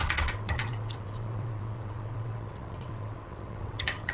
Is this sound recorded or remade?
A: remade